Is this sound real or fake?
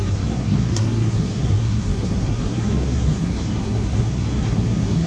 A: fake